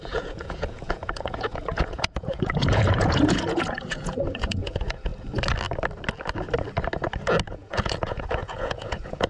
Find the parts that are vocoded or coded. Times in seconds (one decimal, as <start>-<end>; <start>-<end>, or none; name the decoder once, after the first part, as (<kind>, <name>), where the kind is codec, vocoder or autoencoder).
0.0-5.1 (vocoder, Vocos); 7.5-9.3